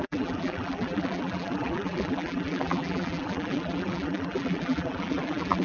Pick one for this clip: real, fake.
fake